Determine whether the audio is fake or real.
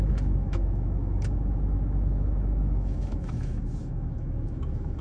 fake